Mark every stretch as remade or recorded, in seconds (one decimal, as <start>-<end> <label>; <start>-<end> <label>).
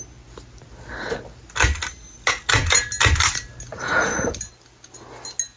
0.0-3.7 recorded; 3.7-4.3 remade; 4.3-5.6 recorded